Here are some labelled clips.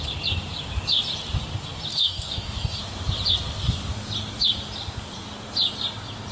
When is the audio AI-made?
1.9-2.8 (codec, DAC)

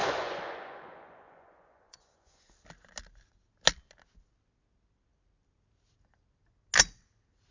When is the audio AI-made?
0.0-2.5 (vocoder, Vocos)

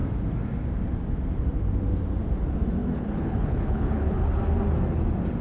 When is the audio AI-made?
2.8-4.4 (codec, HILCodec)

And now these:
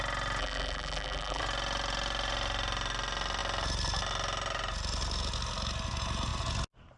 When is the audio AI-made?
0.4-1.4 (vocoder, BigVGAN v2)